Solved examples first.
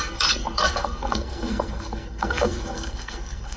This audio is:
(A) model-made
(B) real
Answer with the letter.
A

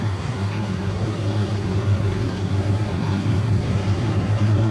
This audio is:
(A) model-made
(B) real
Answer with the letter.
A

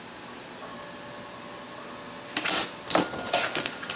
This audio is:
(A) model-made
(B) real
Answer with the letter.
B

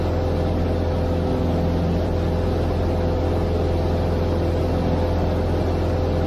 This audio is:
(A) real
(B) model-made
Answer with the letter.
A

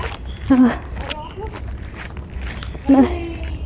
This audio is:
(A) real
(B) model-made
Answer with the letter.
A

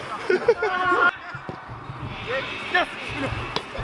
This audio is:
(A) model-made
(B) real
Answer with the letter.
B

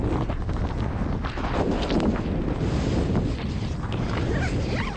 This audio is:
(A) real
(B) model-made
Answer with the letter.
A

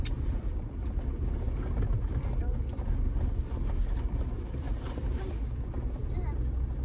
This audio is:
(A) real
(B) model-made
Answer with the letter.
A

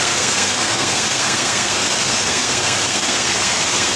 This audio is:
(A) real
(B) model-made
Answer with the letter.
B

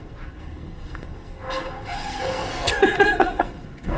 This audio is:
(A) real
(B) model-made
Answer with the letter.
B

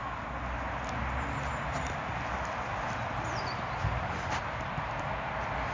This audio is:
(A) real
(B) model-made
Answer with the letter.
A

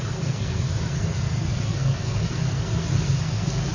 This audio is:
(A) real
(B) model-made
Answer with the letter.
B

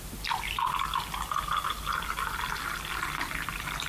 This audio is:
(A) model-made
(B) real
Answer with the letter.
B